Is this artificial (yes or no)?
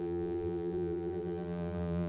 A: yes